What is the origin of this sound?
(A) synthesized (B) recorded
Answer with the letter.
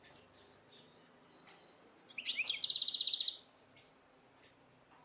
B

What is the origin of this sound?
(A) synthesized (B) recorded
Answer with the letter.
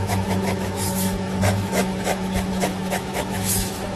A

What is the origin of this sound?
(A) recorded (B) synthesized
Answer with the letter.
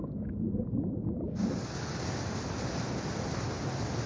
A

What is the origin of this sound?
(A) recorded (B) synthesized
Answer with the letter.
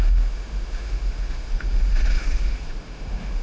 B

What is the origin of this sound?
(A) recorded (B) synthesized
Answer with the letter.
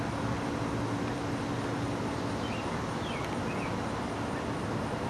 A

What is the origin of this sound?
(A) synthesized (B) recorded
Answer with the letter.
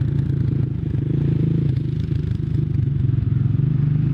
B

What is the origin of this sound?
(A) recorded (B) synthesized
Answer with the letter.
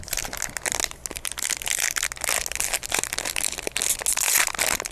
A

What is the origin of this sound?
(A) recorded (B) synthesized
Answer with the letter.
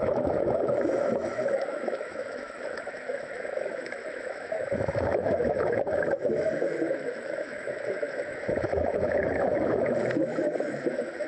B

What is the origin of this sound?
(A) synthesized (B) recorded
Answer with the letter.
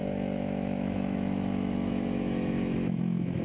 A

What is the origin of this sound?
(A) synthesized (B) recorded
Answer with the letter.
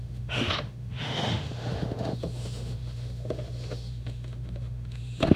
A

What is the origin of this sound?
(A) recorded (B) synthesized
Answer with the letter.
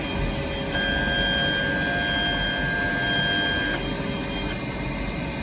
A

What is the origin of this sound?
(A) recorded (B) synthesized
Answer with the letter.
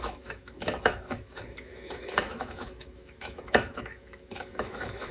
B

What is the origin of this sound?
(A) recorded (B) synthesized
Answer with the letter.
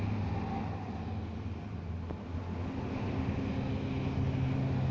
A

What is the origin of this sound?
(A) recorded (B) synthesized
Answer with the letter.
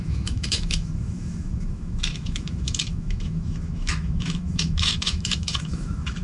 B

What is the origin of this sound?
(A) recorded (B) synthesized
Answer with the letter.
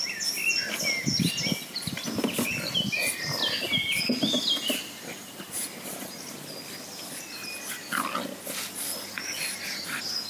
A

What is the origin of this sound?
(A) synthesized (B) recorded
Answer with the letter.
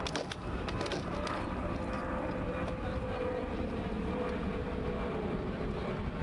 B